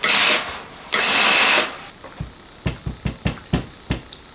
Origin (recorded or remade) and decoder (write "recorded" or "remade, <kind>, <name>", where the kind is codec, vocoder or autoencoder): recorded